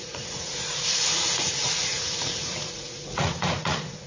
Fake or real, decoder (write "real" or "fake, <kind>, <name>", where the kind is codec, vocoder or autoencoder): fake, vocoder, Vocos